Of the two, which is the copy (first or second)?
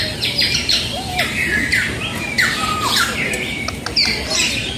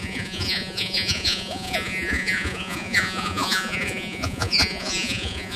second